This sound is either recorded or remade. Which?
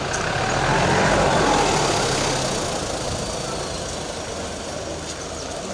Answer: recorded